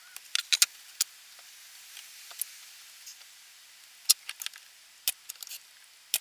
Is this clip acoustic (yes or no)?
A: yes